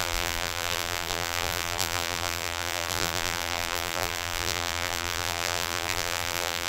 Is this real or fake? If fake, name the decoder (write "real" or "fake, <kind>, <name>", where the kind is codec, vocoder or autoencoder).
fake, vocoder, BigVGAN v2